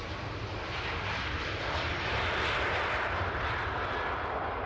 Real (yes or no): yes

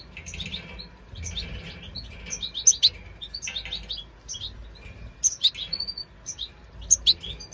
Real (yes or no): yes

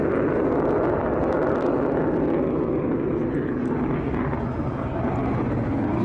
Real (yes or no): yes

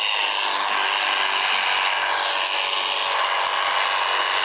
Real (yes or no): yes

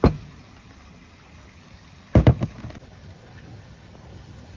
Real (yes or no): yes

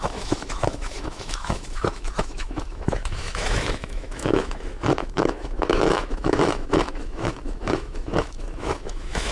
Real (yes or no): no